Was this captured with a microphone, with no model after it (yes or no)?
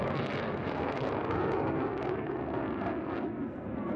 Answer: no